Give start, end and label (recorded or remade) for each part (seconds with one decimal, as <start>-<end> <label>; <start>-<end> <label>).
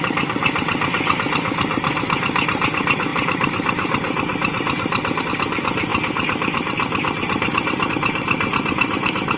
0.0-9.4 recorded